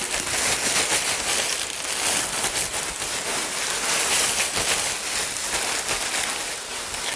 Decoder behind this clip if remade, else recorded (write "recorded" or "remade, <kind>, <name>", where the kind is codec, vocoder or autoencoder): recorded